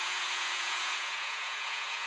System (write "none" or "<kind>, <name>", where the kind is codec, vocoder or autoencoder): vocoder, Vocos